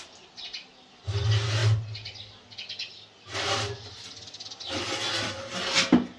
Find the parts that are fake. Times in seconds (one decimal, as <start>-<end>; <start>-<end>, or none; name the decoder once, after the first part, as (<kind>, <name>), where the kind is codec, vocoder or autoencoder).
none